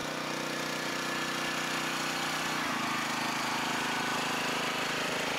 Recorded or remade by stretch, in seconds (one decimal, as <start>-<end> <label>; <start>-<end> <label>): 0.0-5.4 recorded